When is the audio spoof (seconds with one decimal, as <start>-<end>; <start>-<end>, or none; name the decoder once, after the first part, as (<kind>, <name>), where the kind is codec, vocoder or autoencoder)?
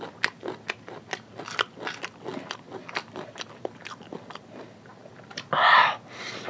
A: none